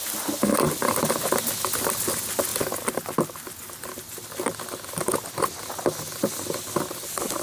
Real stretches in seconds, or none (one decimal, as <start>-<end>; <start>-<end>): 0.0-7.4